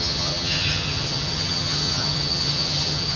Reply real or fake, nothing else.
fake